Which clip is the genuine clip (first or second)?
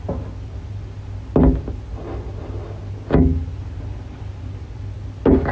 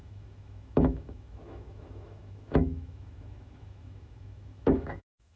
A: first